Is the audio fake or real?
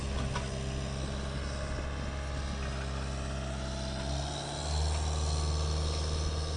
real